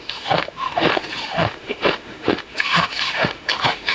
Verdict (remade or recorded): remade